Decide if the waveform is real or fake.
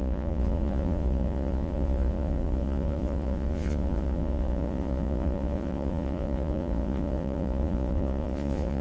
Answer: fake